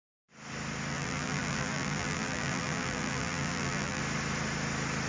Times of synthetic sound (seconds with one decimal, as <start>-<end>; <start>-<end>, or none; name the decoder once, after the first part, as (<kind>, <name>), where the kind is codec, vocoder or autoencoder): 0.9-4.0 (vocoder, BigVGAN v2)

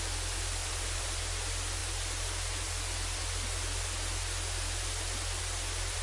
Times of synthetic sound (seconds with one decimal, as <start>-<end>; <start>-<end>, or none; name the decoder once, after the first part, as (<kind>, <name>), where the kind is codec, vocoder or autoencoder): 0.6-1.2 (vocoder, BigVGAN v2)

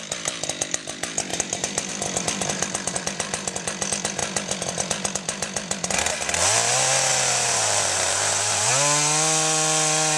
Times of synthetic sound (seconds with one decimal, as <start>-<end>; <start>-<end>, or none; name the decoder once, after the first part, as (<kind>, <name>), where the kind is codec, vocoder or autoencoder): 1.3-1.9 (vocoder, BigVGAN v2); 7.1-8.7

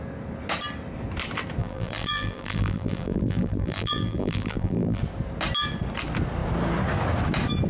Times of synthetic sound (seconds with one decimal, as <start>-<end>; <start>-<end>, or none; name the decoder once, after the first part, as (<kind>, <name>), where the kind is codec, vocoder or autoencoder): 1.6-5.0 (vocoder, BigVGAN v2)

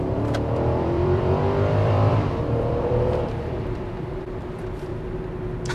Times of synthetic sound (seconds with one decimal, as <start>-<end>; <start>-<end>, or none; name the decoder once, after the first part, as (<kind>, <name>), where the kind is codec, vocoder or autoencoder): 0.0-4.9 (vocoder, BigVGAN v2)

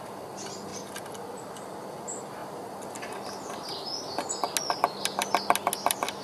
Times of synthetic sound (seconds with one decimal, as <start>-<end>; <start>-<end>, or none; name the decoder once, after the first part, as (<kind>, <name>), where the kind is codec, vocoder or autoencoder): none

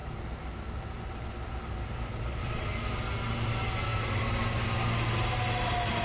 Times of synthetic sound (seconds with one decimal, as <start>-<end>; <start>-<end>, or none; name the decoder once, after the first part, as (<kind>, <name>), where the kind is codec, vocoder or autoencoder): 0.0-3.0 (vocoder, BigVGAN v2)